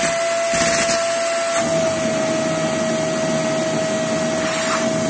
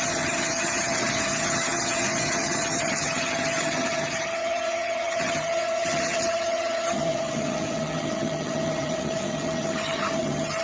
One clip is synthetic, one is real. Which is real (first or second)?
first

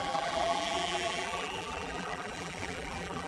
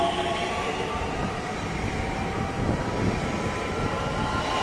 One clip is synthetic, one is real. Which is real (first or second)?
second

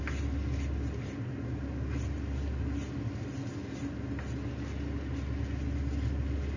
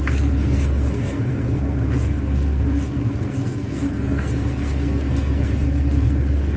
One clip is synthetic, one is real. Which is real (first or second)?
first